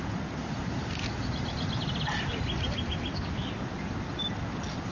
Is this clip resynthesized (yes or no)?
no